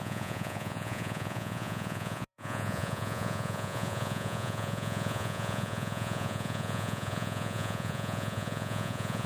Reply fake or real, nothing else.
fake